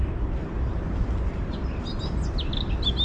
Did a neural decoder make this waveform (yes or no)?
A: no